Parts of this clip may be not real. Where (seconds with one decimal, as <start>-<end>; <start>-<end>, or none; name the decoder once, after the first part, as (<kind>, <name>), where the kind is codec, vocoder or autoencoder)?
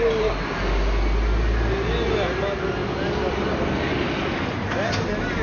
none